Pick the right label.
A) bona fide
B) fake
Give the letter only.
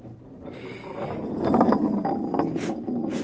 B